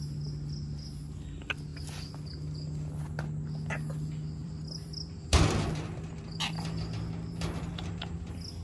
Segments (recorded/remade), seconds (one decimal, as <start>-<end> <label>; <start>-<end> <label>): 0.0-4.4 recorded; 4.4-6.2 remade; 6.2-8.6 recorded